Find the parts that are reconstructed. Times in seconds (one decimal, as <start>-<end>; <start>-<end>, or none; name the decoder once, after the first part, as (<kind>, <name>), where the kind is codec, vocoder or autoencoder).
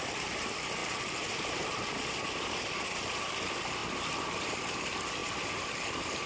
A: none